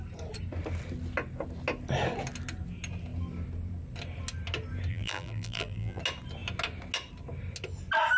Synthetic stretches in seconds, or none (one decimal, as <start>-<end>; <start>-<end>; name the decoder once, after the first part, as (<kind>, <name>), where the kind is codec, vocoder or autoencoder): 4.9-6.0 (vocoder, BigVGAN v2)